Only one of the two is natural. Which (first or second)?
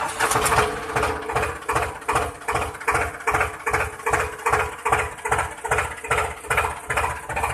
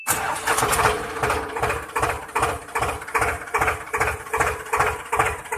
first